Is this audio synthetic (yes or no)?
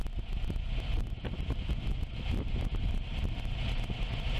no